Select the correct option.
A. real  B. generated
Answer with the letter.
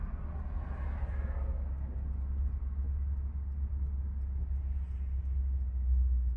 A